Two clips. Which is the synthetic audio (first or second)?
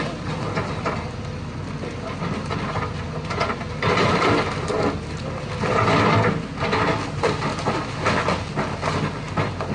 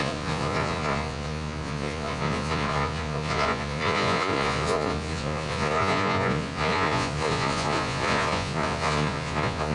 second